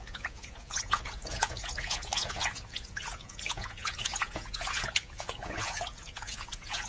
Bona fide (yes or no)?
no